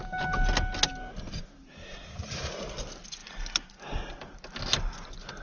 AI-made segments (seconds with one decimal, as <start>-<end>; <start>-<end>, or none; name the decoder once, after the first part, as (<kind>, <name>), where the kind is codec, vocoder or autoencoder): none